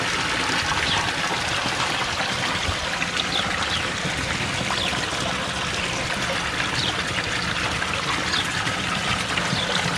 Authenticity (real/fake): real